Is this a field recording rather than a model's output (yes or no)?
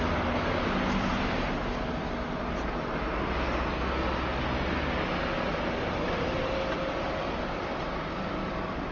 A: yes